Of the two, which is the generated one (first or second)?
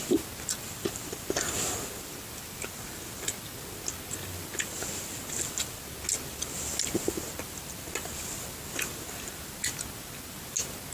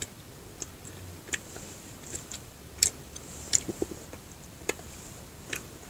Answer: second